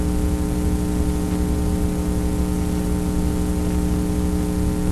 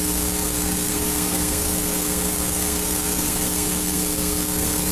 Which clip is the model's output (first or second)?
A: second